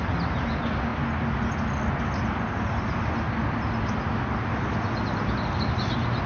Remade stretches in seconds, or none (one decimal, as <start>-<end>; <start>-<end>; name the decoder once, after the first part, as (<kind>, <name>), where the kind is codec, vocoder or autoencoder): none